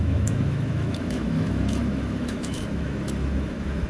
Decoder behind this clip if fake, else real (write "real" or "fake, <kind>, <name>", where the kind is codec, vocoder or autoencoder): fake, autoencoder, DAC-VAE